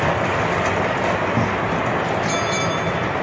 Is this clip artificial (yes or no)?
no